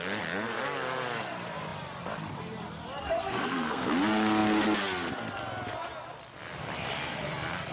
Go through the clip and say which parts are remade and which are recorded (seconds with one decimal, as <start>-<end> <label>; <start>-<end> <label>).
0.0-3.2 recorded; 3.2-3.9 remade; 3.9-7.7 recorded

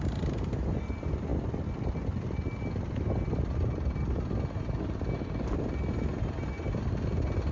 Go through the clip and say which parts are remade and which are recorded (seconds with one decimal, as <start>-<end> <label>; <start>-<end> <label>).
0.0-7.5 recorded

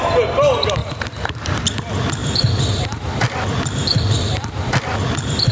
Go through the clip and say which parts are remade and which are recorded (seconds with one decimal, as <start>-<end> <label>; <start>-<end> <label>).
0.0-0.8 recorded; 0.8-1.5 remade; 1.5-2.2 recorded; 2.2-5.5 remade